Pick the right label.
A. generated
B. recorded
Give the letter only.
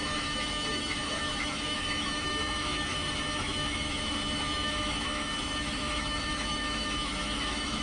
A